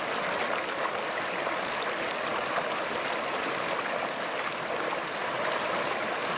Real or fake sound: real